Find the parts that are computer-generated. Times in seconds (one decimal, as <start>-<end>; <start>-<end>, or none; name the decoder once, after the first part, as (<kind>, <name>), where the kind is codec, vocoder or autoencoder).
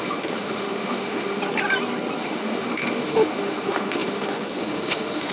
0.0-1.4 (autoencoder, DAC-VAE); 2.2-5.3